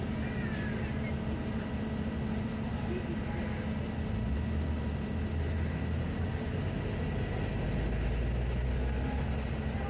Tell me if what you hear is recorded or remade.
recorded